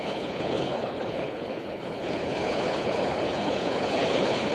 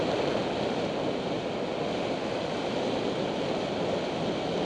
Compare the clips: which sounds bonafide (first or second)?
second